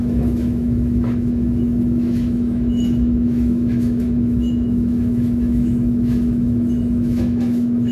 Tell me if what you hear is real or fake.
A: fake